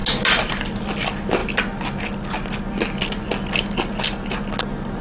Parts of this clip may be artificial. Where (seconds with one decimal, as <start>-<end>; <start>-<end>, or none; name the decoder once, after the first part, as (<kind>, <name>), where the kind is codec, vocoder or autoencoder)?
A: none